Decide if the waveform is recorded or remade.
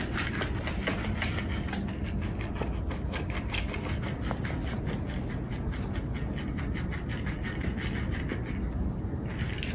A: recorded